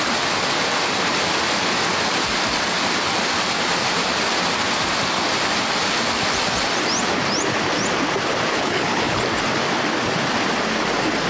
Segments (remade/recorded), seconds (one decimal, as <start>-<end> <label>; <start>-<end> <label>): 0.0-8.5 recorded; 8.5-9.2 remade; 9.2-11.3 recorded

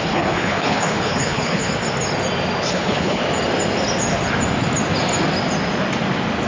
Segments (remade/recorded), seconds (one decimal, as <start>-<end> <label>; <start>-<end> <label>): 0.0-1.7 remade; 1.7-2.7 recorded; 2.7-3.2 remade; 3.2-6.5 recorded

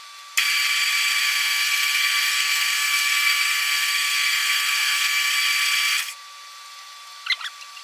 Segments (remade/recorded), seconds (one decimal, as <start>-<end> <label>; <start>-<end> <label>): 0.0-1.2 recorded; 1.2-5.3 remade; 5.3-7.8 recorded

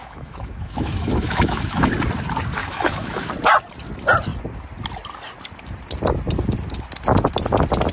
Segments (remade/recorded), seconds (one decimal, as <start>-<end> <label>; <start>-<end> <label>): 0.0-1.9 remade; 1.9-2.6 recorded; 2.6-3.3 remade; 3.3-7.9 recorded

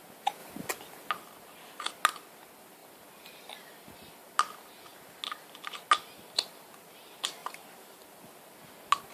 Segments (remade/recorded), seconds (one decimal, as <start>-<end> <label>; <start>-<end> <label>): 0.0-7.4 recorded; 7.4-8.0 remade; 8.0-9.1 recorded

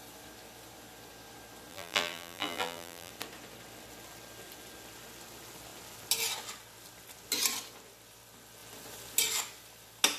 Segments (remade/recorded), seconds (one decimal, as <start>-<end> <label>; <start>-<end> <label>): 0.0-1.7 recorded; 1.7-3.1 remade; 3.1-10.2 recorded